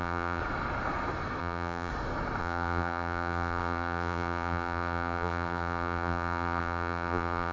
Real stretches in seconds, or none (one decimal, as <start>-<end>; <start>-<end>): 0.4-1.4; 1.9-2.4